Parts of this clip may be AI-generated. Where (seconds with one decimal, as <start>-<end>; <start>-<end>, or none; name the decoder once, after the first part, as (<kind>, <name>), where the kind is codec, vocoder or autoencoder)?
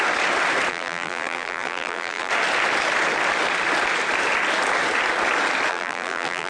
0.7-2.3 (vocoder, BigVGAN v2); 5.7-6.5